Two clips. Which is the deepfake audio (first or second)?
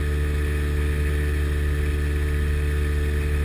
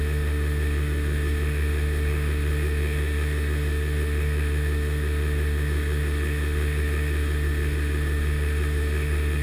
second